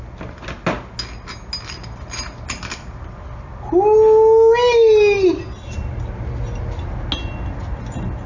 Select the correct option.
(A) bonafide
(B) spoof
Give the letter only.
A